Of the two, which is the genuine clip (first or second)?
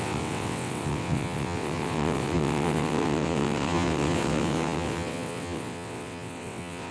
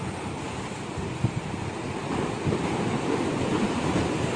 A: second